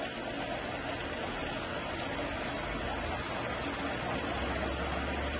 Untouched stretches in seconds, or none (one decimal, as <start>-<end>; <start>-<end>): 0.0-5.4